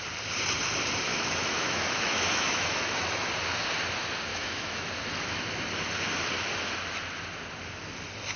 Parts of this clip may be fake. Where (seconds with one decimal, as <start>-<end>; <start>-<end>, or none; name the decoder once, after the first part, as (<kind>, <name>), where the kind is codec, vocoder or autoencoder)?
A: 1.1-3.3 (autoencoder, DAC-VAE); 4.3-4.9